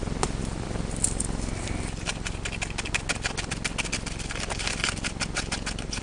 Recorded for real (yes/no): yes